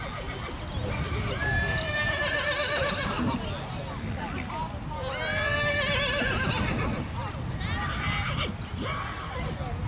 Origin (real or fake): real